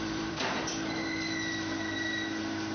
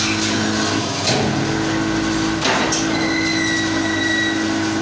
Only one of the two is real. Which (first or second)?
second